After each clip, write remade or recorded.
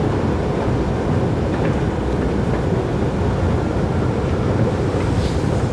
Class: recorded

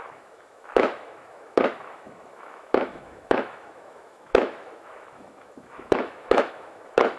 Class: remade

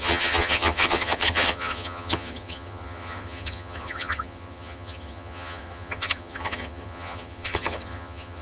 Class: remade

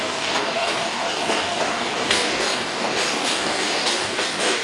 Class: remade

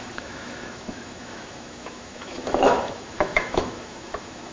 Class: remade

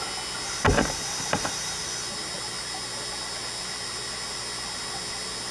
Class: recorded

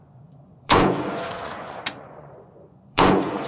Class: remade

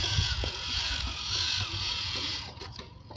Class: remade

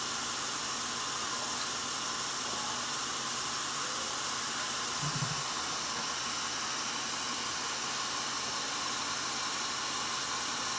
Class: recorded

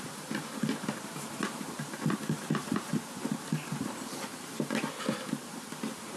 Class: remade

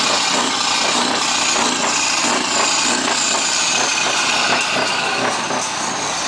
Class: recorded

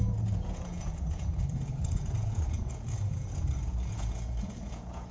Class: remade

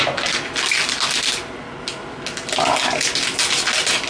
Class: recorded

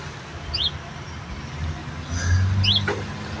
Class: recorded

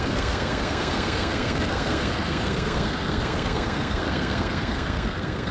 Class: remade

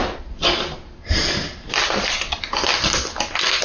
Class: recorded